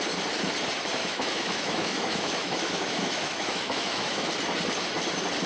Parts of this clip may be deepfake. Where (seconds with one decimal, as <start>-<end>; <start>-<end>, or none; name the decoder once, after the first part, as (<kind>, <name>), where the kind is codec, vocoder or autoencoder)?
1.0-4.3 (autoencoder, DAC-VAE)